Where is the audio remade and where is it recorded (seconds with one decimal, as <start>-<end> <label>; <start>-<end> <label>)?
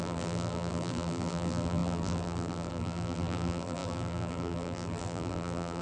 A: 0.0-5.8 remade